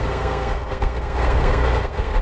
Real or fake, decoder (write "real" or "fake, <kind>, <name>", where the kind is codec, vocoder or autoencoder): fake, codec, SNAC